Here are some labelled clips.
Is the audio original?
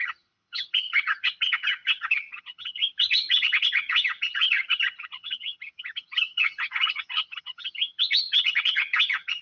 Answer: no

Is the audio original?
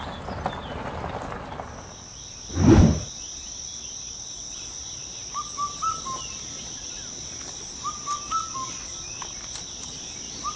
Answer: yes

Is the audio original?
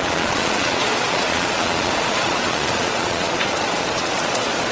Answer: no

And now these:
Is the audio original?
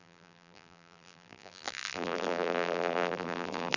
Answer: no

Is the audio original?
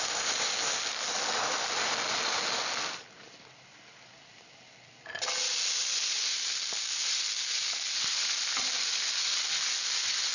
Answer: yes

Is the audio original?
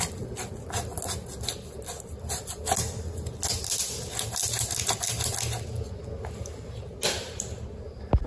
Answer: yes